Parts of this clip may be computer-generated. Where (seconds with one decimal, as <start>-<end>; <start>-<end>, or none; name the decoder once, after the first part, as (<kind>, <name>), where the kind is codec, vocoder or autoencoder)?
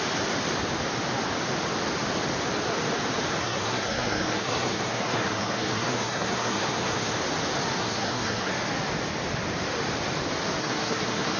3.4-7.2 (codec, SNAC); 7.8-8.5; 10.6-11.4